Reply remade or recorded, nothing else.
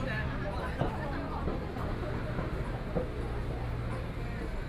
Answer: recorded